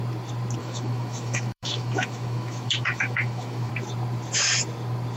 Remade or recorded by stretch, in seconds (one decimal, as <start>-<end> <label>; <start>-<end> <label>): 0.0-0.6 recorded; 0.6-3.7 remade; 3.7-5.2 recorded